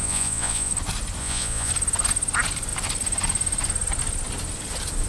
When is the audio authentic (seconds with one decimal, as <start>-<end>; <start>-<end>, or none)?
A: 0.7-1.2; 1.7-5.1